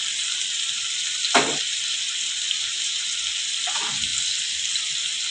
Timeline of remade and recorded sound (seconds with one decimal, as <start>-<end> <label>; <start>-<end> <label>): 0.0-5.3 recorded